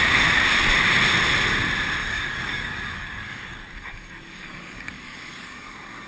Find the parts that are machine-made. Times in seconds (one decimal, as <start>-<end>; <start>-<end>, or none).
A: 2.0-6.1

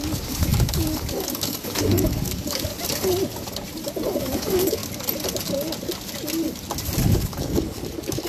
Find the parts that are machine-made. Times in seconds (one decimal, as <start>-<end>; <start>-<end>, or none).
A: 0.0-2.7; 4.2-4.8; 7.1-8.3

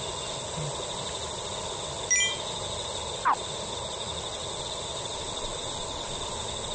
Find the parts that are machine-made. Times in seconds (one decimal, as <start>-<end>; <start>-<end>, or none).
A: none

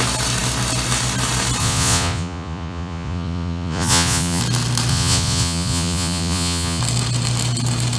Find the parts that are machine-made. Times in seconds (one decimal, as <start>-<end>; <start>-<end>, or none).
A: 1.6-4.4; 4.9-6.8

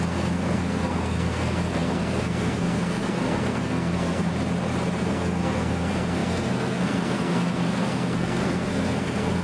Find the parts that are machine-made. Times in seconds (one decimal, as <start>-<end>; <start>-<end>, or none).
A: 0.0-4.3; 5.0-9.4

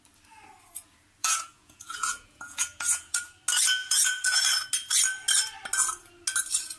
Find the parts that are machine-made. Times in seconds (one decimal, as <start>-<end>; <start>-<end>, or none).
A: 1.2-3.2; 3.8-4.4